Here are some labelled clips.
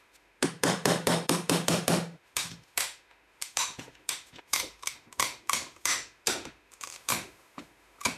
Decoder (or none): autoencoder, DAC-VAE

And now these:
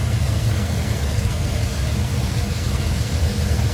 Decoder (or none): codec, SNAC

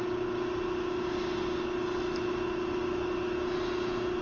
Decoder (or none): none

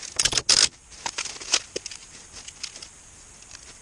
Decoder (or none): none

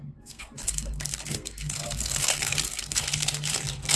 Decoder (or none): codec, SNAC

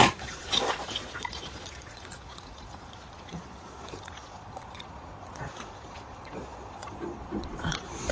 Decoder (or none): vocoder, Vocos